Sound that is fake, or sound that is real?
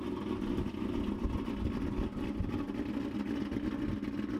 real